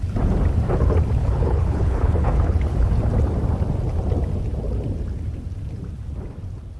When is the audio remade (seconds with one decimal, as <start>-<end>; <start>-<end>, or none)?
1.2-2.9